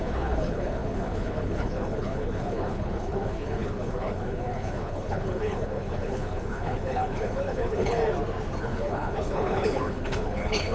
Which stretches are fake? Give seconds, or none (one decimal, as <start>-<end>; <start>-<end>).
0.0-8.0; 8.6-10.7